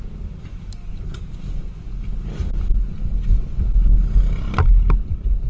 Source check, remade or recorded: recorded